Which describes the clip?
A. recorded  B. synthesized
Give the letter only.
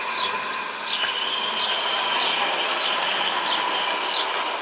A